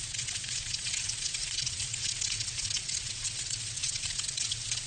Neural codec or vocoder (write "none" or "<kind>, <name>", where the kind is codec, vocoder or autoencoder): vocoder, WaveNeXt